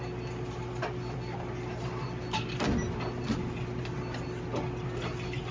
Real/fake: real